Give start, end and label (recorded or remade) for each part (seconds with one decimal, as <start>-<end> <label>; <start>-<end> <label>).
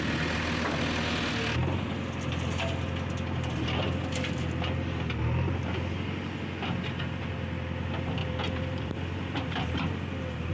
0.0-8.2 recorded; 8.2-10.5 remade